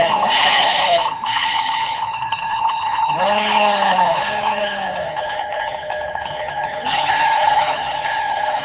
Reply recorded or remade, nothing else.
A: remade